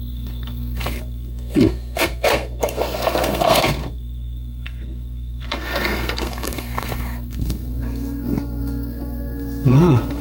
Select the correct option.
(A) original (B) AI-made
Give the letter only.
B